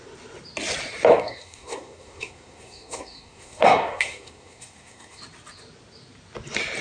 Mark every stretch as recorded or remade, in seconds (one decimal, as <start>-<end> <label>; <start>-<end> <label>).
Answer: 0.0-1.1 recorded; 1.1-5.2 remade; 5.2-6.8 recorded